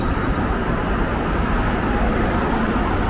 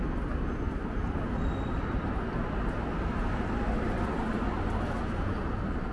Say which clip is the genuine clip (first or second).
second